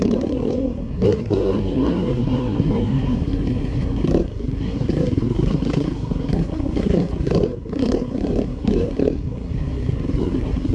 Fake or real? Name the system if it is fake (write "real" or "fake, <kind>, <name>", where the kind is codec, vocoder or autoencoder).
fake, codec, SNAC